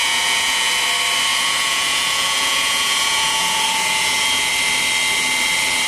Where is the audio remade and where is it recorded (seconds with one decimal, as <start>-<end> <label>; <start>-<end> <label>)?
0.0-0.8 remade; 0.8-1.3 recorded; 1.3-4.5 remade; 4.5-5.9 recorded